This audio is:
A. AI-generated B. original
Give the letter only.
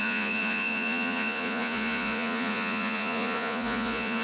A